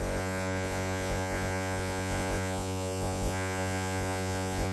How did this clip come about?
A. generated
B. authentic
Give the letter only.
A